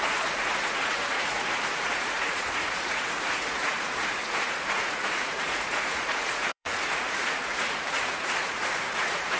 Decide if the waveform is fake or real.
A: fake